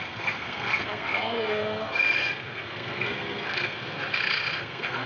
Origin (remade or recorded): remade